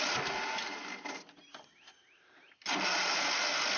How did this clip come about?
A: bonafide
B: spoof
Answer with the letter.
A